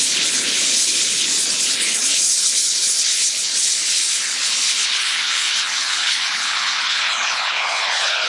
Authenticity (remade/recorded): remade